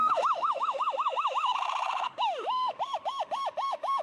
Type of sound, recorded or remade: remade